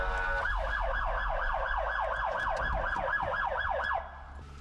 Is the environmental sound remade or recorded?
recorded